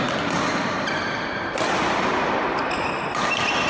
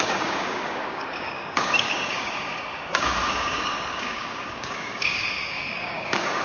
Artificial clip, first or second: second